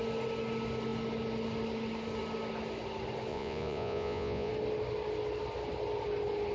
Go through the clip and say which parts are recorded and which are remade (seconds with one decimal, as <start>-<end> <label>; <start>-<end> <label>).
0.0-3.3 recorded; 3.3-4.5 remade; 4.5-6.5 recorded

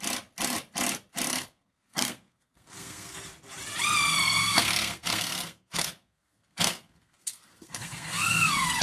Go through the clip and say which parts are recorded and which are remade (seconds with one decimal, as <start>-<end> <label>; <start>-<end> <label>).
0.0-1.3 recorded; 1.3-3.3 remade; 3.3-4.4 recorded; 4.4-8.8 remade